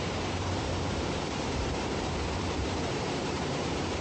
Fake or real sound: fake